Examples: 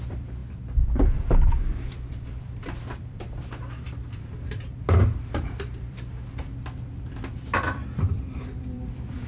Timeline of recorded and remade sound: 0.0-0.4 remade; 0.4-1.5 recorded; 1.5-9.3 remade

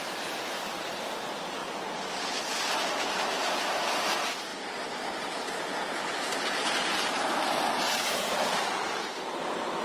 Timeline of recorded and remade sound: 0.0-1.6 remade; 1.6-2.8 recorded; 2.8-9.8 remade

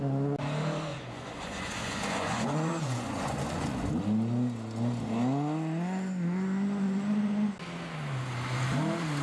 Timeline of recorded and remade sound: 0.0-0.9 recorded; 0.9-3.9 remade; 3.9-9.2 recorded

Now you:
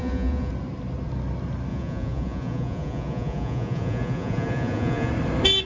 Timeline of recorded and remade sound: 0.0-0.5 remade; 0.5-1.7 recorded; 1.7-5.1 remade; 5.1-5.7 recorded

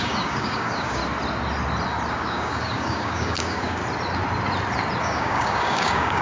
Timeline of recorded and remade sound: 0.0-1.0 remade; 1.0-2.1 recorded; 2.1-3.8 remade; 3.8-5.0 recorded; 5.0-6.2 remade